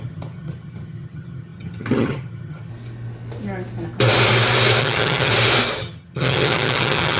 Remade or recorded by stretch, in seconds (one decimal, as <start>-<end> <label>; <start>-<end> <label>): 0.0-2.7 remade; 2.7-4.8 recorded; 4.8-5.3 remade; 5.3-5.8 recorded; 5.8-7.2 remade